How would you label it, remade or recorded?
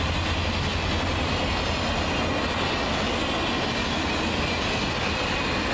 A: recorded